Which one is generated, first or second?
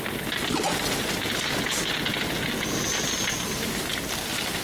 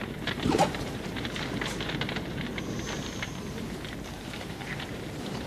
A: second